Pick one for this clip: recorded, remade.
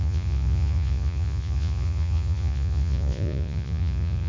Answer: remade